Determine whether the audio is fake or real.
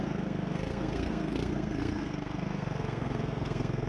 fake